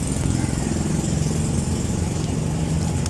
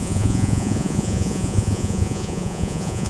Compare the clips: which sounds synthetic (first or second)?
second